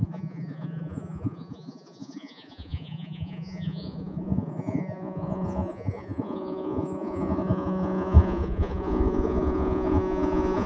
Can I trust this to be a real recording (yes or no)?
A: no